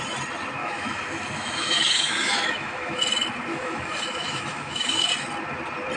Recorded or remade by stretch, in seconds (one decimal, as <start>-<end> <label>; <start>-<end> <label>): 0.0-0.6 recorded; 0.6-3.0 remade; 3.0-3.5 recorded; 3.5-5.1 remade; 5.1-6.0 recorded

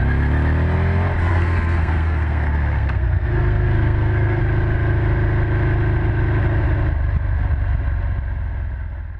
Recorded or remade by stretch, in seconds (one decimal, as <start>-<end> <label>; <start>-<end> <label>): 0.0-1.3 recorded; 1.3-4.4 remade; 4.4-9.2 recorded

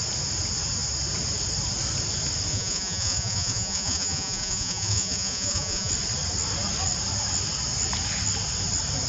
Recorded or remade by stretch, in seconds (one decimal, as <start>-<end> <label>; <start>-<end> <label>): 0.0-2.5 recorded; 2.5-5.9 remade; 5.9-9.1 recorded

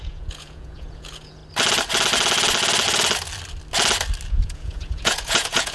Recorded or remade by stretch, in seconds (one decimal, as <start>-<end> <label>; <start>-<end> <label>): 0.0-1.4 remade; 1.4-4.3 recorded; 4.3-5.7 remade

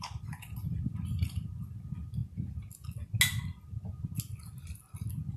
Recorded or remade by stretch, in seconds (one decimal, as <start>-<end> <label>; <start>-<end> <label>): 0.0-5.4 recorded

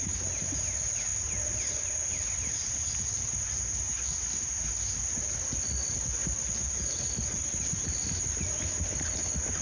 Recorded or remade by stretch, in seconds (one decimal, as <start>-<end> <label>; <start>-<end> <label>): 0.0-9.6 recorded